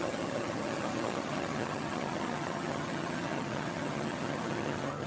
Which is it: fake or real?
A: fake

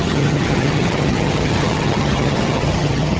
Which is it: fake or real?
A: fake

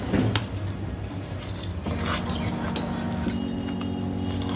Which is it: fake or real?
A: real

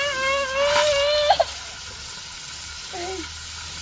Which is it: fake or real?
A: real